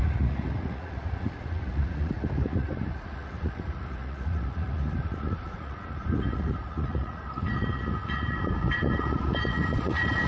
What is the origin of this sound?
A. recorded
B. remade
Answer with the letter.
B